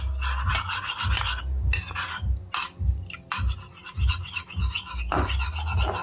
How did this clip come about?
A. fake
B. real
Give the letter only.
B